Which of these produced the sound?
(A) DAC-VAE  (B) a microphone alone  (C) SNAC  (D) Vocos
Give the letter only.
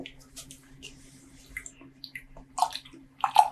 B